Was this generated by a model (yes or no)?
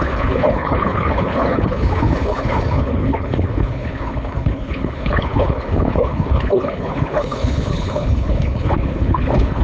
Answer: yes